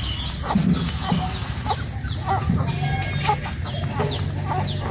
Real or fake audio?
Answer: real